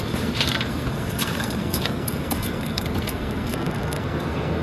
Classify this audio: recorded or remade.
remade